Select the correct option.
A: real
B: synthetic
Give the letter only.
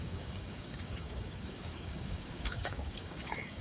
B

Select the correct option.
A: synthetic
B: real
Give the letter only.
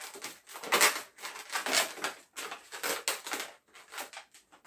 B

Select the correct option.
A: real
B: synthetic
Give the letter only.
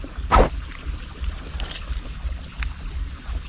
A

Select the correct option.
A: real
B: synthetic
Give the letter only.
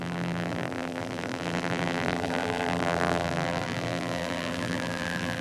B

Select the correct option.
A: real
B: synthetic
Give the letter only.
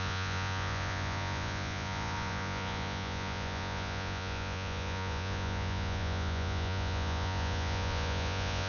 B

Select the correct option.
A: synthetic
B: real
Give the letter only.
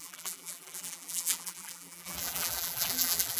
A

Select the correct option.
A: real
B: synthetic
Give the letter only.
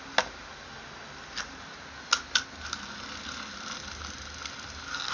A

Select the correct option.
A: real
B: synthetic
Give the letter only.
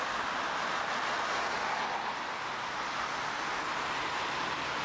A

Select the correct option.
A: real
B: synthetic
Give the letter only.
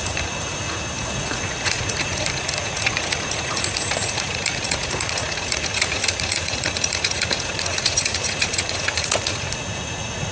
B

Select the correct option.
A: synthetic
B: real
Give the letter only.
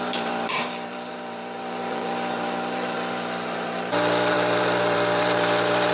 A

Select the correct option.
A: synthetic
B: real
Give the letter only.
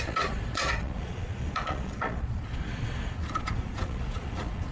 A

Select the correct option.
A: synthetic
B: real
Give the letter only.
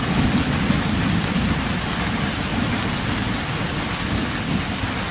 B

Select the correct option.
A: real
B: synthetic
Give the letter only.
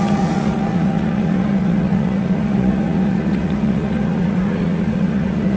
B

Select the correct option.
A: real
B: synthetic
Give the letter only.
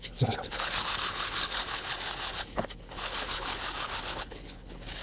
B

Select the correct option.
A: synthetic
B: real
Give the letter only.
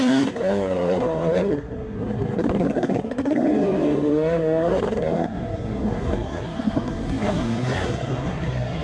A